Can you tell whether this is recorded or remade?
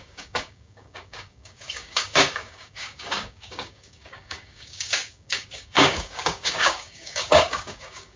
remade